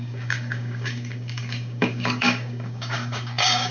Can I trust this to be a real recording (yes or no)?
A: no